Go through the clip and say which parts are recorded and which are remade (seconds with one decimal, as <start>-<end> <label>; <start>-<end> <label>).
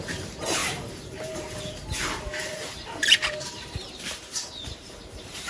0.0-5.5 remade